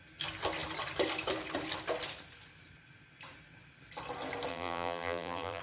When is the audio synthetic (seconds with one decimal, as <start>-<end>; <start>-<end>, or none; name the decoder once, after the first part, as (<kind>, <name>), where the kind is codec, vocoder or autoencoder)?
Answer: 4.5-5.6 (vocoder, BigVGAN v2)